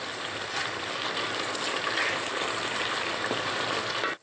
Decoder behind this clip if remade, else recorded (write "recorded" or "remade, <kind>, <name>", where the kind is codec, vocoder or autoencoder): recorded